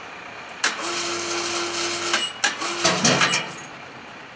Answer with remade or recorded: recorded